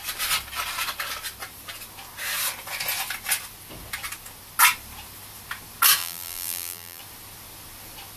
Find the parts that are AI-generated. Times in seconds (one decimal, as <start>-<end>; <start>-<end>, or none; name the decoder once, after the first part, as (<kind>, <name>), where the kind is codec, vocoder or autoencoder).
6.0-7.0 (vocoder, BigVGAN v2)